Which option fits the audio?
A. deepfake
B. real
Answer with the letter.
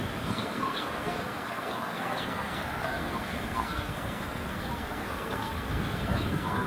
A